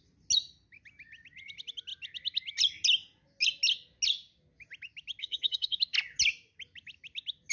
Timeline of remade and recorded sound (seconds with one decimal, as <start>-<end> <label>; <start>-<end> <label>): 0.0-5.2 recorded; 5.2-5.8 remade; 5.8-7.5 recorded